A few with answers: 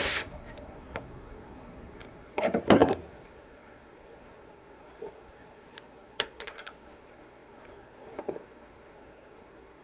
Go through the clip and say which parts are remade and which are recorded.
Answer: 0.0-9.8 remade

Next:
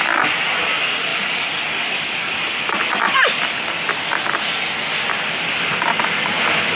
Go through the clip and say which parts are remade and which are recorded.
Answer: 0.0-6.8 recorded

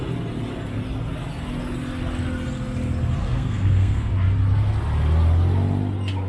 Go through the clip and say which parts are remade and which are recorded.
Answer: 0.0-3.2 recorded; 3.2-4.1 remade; 4.1-6.3 recorded

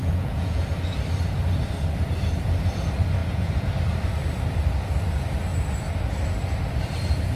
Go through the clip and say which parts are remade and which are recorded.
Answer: 0.0-1.0 remade; 1.0-3.2 recorded; 3.2-3.7 remade; 3.7-7.4 recorded